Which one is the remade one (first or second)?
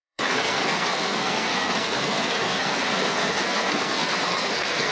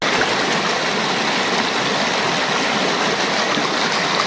first